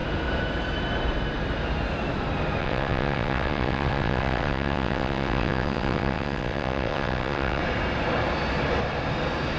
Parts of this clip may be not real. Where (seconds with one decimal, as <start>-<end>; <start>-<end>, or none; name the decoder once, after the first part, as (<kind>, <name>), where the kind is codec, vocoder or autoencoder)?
2.6-7.6 (vocoder, WaveNeXt)